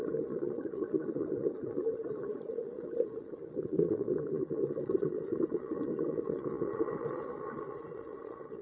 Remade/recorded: remade